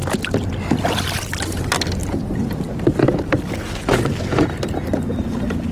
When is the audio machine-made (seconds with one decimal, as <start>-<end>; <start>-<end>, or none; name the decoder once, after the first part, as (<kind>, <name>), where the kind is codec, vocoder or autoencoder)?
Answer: 0.0-1.0 (vocoder, BigVGAN v2)